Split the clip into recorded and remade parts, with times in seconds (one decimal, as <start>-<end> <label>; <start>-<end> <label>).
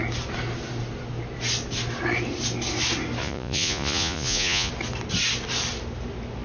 0.0-3.2 recorded; 3.2-4.7 remade; 4.7-6.4 recorded